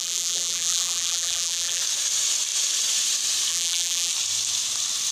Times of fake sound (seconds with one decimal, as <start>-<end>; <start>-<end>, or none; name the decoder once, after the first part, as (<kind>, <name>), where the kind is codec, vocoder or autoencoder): 0.0-1.8 (vocoder, BigVGAN v2); 3.5-4.1